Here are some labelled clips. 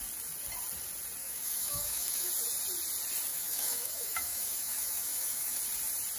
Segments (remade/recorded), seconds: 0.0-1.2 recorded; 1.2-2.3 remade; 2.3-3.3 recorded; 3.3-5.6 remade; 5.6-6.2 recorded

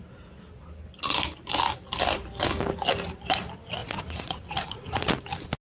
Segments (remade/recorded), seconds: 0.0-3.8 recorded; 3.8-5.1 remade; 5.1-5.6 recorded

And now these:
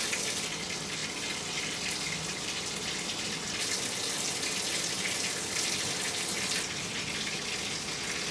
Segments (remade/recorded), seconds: 0.0-8.3 recorded

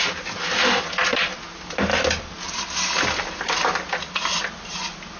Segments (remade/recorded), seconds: 0.0-5.2 recorded

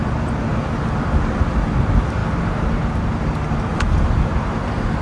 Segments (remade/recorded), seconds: 0.0-3.7 recorded; 3.7-5.0 remade

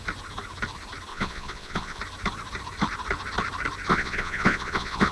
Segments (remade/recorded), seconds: 0.0-1.1 recorded; 1.1-2.0 remade; 2.0-3.9 recorded; 3.9-5.1 remade